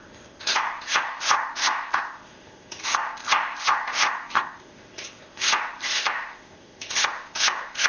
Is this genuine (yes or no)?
no